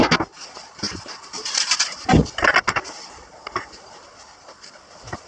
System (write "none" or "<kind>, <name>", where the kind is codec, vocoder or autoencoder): none